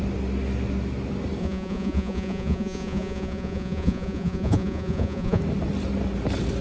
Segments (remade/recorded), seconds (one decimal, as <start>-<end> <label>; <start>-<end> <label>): 0.0-1.4 recorded; 1.4-5.4 remade; 5.4-6.6 recorded